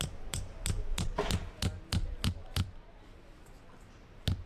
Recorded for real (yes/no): yes